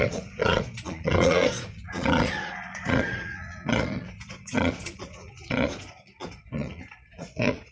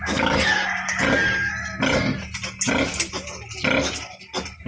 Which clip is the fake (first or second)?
first